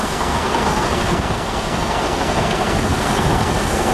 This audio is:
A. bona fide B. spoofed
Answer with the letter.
B